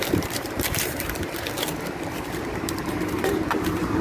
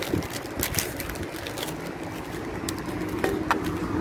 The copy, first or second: first